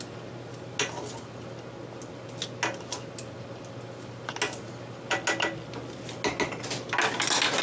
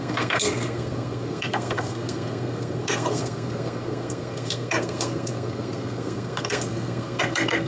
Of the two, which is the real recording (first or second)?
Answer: first